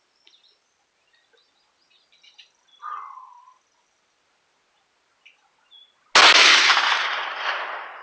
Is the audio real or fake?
real